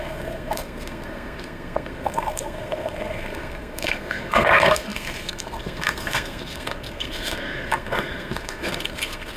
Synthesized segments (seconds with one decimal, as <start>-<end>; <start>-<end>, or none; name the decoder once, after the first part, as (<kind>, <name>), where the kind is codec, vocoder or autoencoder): 0.0-9.4 (codec, SNAC)